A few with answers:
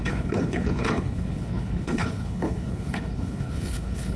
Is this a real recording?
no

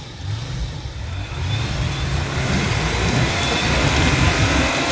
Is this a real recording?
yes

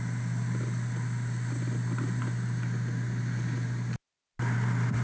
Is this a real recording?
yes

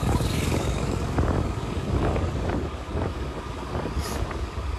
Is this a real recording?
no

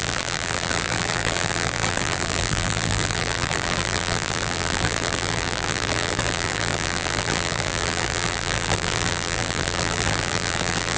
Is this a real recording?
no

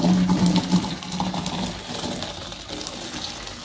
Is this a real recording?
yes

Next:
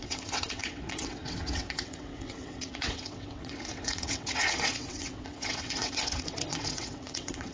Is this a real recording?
no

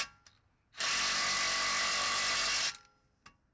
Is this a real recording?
yes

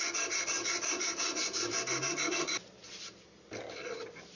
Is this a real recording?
yes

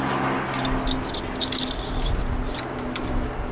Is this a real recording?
yes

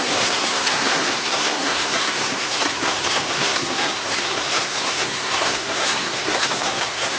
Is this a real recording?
no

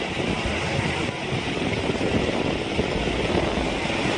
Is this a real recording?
yes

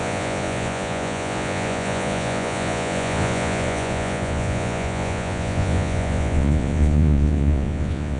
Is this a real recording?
no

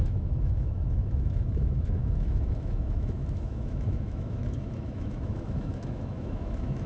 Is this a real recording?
no